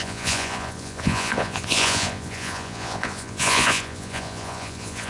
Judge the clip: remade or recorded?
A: remade